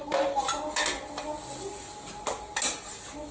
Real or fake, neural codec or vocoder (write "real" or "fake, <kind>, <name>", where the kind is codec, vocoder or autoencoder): real